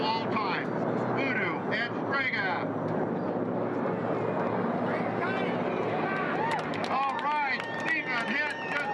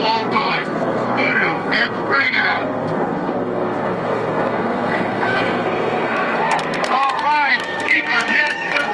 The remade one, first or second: second